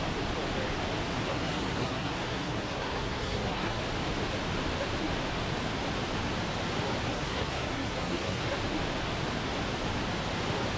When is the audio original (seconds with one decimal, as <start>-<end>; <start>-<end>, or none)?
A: 0.0-1.3; 3.8-7.1; 8.5-10.8